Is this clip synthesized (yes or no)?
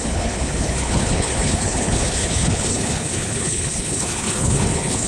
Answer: yes